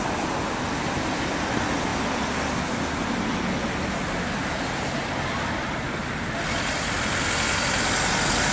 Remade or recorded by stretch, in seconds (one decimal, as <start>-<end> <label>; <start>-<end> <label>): 0.0-8.5 recorded

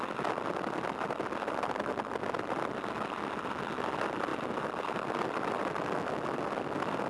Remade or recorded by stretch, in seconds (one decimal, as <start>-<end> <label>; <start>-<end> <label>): 0.0-7.1 recorded

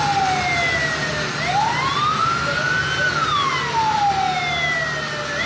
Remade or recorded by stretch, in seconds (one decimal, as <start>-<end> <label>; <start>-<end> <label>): 0.0-5.5 recorded